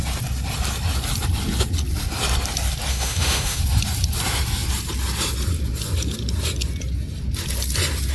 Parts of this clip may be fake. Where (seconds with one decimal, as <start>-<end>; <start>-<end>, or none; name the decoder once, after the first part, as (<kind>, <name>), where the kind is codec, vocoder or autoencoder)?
2.9-3.6 (autoencoder, DAC-VAE)